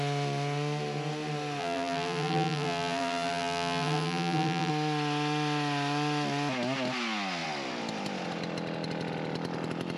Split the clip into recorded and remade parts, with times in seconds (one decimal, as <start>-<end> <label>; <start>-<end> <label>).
0.0-1.6 recorded; 1.6-4.7 remade; 4.7-10.0 recorded